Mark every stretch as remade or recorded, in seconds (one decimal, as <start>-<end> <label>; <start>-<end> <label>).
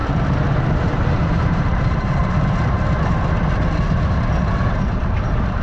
0.0-0.8 recorded; 0.8-2.2 remade; 2.2-5.0 recorded; 5.0-5.6 remade